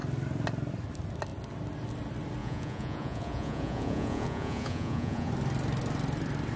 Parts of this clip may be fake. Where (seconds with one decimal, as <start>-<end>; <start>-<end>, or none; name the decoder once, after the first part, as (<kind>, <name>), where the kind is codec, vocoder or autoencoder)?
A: 2.4-5.3 (vocoder, Vocos)